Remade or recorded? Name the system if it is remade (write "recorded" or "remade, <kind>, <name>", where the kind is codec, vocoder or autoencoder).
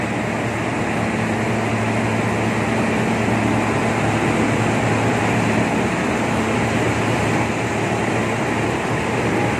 recorded